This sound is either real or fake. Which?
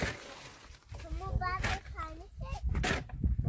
real